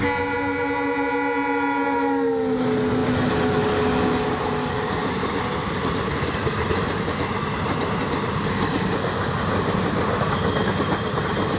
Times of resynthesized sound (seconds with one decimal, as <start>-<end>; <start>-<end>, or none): none